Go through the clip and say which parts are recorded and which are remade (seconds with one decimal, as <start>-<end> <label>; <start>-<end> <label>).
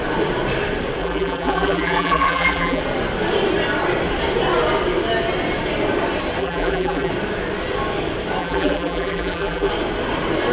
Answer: 0.0-1.0 recorded; 1.0-2.8 remade; 2.8-6.4 recorded; 6.4-7.1 remade; 7.1-8.4 recorded; 8.4-9.7 remade; 9.7-10.5 recorded